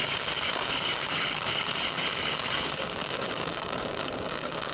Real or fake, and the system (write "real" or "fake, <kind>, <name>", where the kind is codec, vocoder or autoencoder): fake, codec, DAC